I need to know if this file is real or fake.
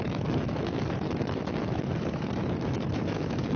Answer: fake